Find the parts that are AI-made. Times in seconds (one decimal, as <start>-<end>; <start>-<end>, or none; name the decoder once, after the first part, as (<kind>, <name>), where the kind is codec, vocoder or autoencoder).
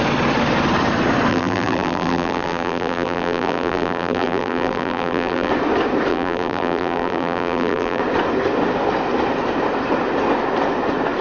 1.3-5.5 (vocoder, BigVGAN v2); 6.1-8.0